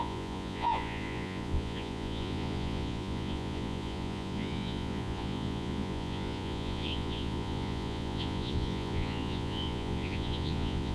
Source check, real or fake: fake